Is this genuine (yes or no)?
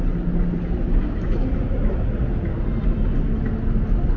yes